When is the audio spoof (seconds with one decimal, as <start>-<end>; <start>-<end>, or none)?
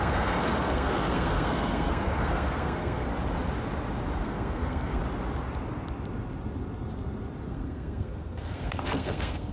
0.0-3.1; 4.2-5.0; 7.5-9.5